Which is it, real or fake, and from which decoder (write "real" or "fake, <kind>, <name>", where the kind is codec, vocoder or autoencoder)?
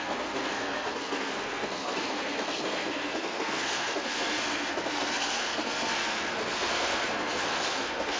fake, codec, SNAC